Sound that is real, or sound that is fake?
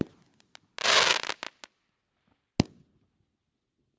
real